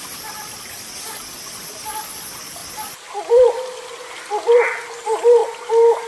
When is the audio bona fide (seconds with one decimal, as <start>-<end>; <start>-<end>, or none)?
0.0-6.1